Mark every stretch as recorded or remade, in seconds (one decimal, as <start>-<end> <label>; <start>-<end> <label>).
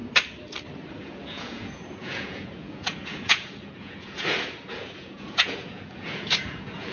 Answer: 0.0-0.9 recorded; 0.9-6.9 remade